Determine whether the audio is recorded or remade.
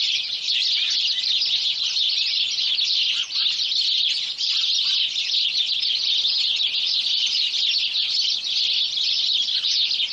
recorded